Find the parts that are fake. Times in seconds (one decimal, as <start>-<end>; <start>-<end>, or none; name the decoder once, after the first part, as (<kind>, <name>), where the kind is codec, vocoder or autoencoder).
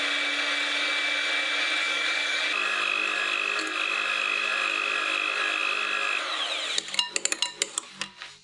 1.8-2.4 (codec, DAC)